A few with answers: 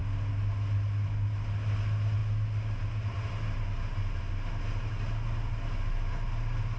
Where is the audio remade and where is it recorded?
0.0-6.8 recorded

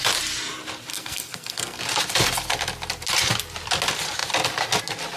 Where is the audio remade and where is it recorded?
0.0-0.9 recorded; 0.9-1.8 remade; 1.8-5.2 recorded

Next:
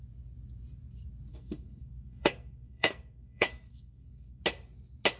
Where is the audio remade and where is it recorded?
0.0-1.3 recorded; 1.3-4.4 remade; 4.4-5.2 recorded

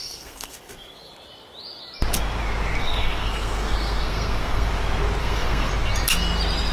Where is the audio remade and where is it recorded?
0.0-1.1 remade; 1.1-2.8 recorded; 2.8-4.7 remade; 4.7-5.2 recorded; 5.2-5.7 remade; 5.7-6.7 recorded

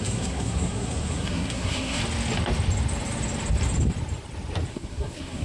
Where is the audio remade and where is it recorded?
0.0-2.0 remade; 2.0-4.7 recorded; 4.7-5.4 remade